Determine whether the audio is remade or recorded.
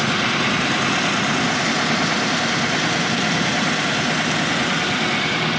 recorded